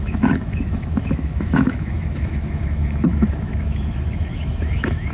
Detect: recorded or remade remade